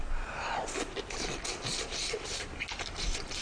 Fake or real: real